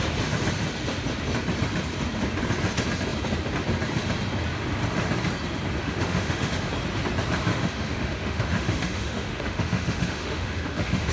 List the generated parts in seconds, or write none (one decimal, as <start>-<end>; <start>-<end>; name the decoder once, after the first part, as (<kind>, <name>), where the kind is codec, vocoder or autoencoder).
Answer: 5.8-6.7 (autoencoder, DAC-VAE); 7.5-11.1

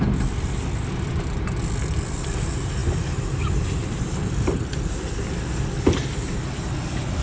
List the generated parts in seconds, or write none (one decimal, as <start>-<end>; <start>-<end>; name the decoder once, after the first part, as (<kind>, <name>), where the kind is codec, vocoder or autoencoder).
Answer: none

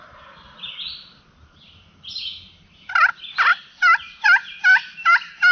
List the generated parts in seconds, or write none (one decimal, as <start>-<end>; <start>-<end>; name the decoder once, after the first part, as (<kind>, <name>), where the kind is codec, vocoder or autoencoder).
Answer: none

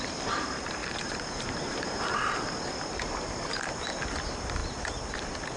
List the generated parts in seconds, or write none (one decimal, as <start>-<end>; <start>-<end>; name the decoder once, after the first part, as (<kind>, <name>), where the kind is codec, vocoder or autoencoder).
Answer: 0.8-2.0 (vocoder, BigVGAN v2)

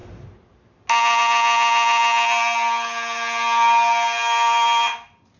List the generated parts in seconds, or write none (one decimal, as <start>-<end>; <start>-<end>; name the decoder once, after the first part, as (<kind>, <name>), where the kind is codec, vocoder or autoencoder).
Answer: none

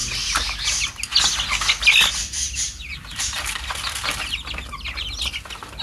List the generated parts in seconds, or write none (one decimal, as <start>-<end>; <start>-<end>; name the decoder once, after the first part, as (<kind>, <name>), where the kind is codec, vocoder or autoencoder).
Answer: none